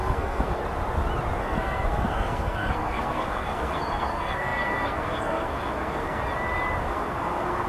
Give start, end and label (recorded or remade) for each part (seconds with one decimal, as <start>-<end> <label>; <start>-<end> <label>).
0.0-0.6 remade; 0.6-1.4 recorded; 1.4-6.2 remade; 6.2-6.8 recorded; 6.8-7.7 remade